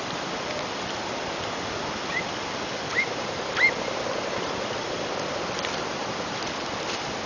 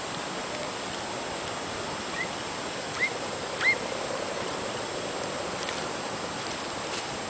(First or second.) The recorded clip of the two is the second